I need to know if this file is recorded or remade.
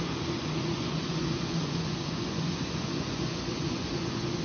remade